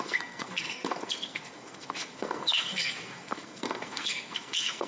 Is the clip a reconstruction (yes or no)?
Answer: yes